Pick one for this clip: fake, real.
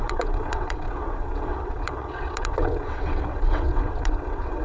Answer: fake